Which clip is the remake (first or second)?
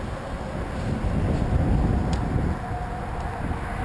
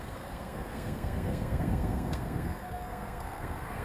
second